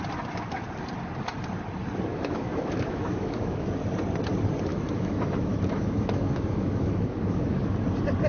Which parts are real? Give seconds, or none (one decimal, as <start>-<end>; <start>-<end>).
0.0-2.1; 3.7-4.7; 7.8-8.3